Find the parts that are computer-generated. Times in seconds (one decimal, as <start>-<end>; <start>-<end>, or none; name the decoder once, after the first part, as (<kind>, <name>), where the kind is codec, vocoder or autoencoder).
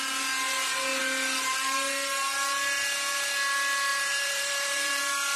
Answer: 3.9-5.0 (vocoder, BigVGAN v2)